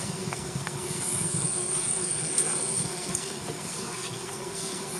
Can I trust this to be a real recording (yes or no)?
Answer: no